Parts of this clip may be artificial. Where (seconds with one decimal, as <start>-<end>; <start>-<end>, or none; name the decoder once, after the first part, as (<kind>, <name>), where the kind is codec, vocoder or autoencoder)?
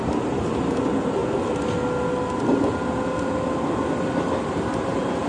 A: none